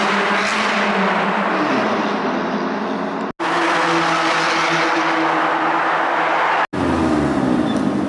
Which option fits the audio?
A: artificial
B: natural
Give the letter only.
B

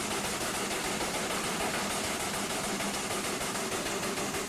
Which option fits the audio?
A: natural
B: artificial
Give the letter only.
A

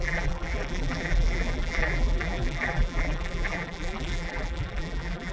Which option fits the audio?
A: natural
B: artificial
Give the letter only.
B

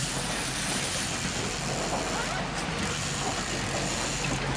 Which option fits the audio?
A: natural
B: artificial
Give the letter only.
A